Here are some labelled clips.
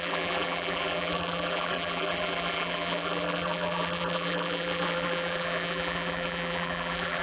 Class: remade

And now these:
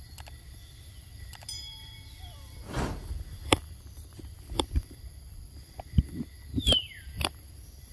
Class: remade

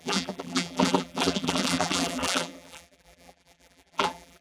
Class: remade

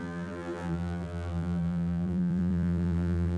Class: remade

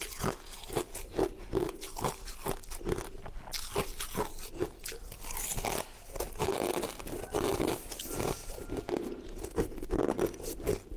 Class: recorded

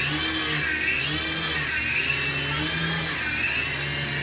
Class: recorded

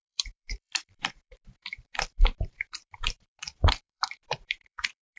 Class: remade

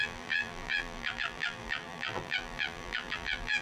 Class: remade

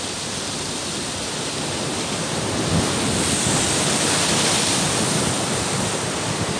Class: recorded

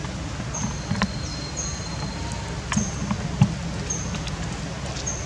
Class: recorded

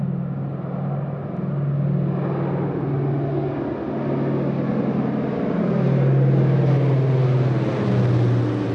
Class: recorded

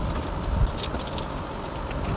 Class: recorded